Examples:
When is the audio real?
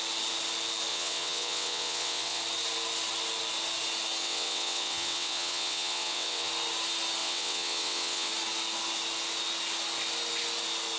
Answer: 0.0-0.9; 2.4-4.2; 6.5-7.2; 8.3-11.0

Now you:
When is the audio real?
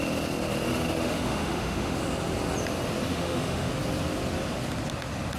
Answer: 0.0-0.7; 2.0-3.1; 3.7-5.4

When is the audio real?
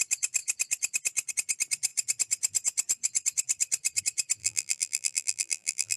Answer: 0.0-4.4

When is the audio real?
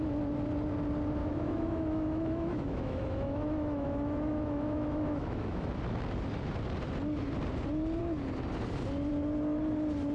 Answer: 0.0-1.2; 5.7-10.1